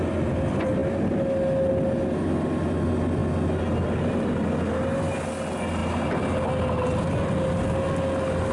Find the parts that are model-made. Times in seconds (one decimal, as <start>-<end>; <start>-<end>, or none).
none